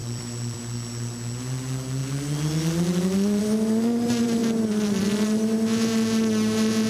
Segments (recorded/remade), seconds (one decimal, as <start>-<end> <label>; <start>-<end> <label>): 0.0-0.6 remade; 0.6-4.4 recorded; 4.4-5.0 remade; 5.0-6.9 recorded